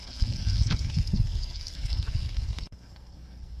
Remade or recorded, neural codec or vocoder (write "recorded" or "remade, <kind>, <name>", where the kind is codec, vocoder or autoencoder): remade, codec, SNAC